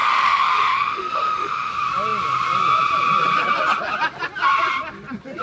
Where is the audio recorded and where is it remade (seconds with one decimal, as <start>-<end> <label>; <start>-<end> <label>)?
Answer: 0.0-1.7 remade; 1.7-5.4 recorded